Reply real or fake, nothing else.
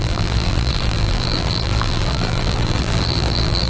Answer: fake